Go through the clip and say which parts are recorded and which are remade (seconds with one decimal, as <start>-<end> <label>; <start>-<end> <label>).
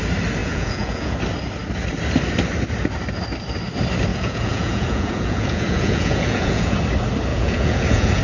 0.0-0.4 recorded; 0.4-1.1 remade; 1.1-4.1 recorded; 4.1-6.8 remade; 6.8-7.3 recorded; 7.3-8.2 remade